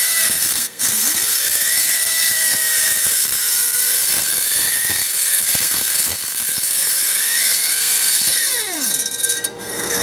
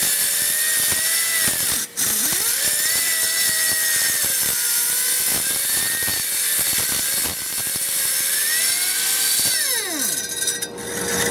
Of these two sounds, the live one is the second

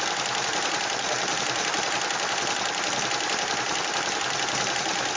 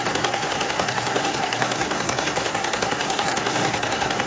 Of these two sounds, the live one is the first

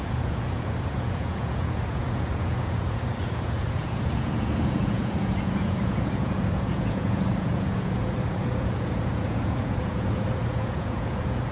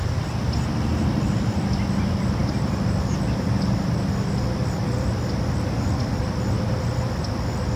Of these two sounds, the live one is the second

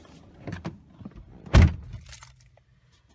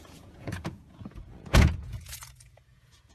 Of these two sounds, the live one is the first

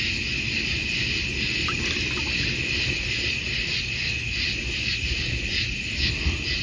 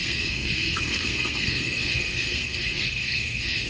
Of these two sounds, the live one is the first